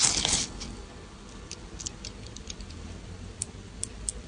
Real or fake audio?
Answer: real